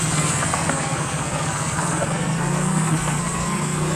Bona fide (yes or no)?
no